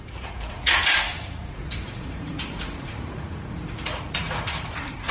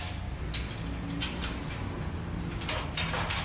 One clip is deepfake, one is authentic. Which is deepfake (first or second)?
first